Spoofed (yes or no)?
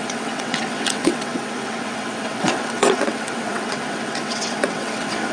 yes